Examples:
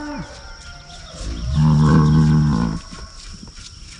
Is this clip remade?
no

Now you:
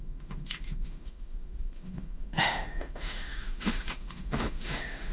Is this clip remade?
yes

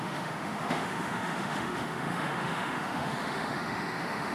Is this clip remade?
yes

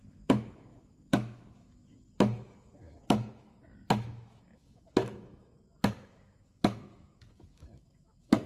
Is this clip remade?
yes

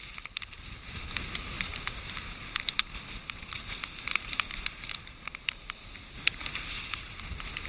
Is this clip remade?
no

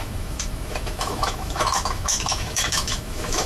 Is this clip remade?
yes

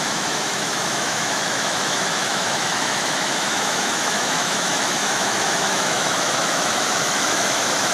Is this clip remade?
yes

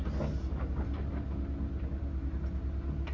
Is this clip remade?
no